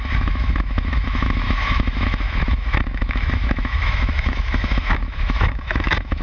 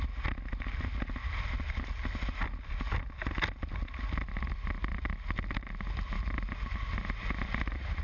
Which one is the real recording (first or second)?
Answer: second